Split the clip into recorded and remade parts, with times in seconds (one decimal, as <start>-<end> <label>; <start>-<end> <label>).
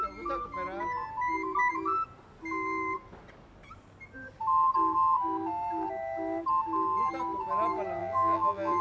0.0-8.0 recorded; 8.0-8.8 remade